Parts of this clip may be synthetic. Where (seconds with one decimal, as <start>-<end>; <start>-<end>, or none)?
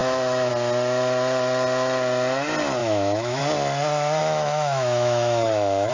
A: 0.0-0.5; 2.8-3.4; 4.2-5.9